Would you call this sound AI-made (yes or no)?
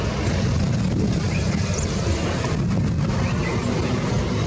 no